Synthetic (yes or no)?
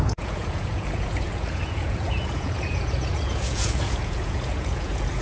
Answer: yes